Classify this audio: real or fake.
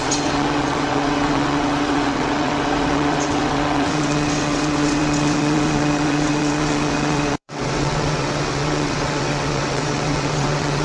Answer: fake